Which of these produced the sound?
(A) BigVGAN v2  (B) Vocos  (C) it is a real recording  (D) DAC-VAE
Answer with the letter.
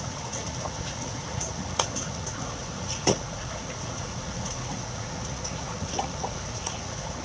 B